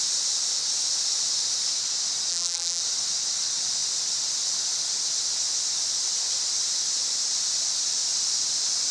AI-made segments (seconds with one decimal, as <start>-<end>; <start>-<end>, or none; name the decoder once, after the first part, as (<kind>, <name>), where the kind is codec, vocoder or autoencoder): 2.3-2.8 (vocoder, BigVGAN v2)